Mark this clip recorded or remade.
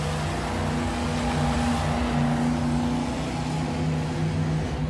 recorded